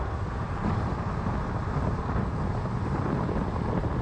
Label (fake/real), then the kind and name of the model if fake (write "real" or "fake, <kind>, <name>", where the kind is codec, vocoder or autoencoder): real